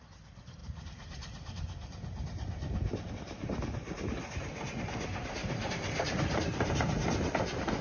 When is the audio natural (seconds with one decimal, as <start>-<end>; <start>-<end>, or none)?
0.0-0.6; 3.1-5.4